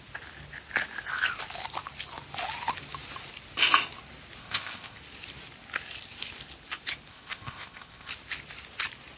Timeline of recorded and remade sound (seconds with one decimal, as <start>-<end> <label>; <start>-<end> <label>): 0.0-4.4 recorded; 4.4-5.0 remade; 5.0-7.1 recorded; 7.1-8.1 remade; 8.1-9.2 recorded